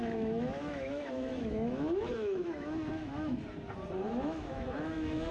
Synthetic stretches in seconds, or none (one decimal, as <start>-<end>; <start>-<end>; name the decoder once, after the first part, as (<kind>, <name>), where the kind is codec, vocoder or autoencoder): 0.0-3.4 (autoencoder, DAC-VAE); 4.1-5.3